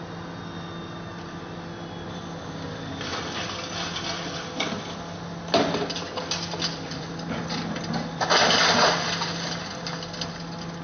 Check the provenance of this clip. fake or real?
real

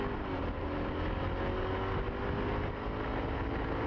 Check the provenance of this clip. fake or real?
real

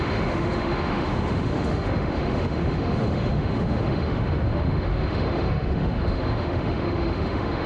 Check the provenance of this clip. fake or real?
fake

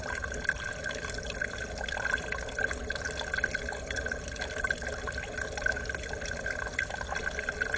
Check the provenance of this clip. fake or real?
real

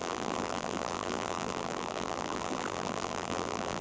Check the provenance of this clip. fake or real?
fake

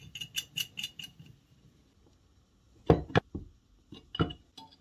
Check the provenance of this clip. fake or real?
real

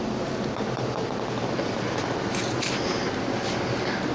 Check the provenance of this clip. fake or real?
real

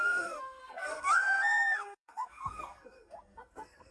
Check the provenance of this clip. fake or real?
fake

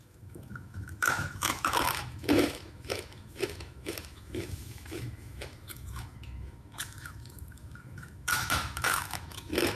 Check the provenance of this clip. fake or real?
fake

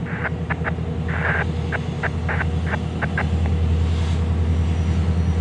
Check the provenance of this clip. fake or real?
real